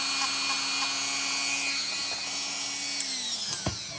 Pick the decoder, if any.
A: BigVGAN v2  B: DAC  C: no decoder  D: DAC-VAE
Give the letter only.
C